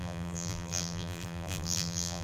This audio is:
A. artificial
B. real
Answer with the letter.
A